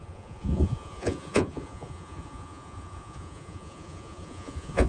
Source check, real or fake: fake